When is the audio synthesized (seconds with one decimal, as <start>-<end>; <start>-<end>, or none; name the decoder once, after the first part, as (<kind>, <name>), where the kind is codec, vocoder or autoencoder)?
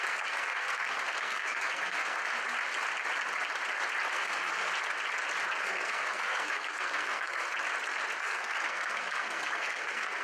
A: 0.0-2.2 (codec, SNAC); 4.1-4.7; 5.6-7.5; 8.2-10.2